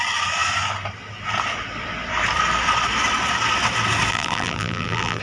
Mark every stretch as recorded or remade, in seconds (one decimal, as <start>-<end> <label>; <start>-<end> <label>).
0.0-4.1 recorded; 4.1-5.2 remade